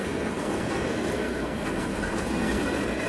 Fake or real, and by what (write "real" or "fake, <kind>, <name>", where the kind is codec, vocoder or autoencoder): fake, codec, SNAC